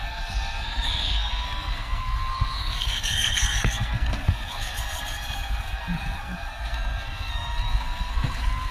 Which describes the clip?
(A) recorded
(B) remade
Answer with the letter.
B